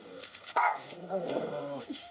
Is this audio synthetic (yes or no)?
yes